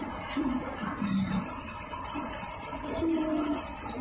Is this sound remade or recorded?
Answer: recorded